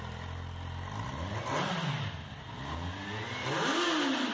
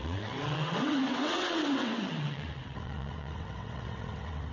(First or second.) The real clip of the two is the first